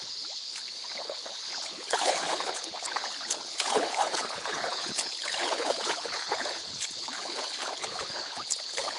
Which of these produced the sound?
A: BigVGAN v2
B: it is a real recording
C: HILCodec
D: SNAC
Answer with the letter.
C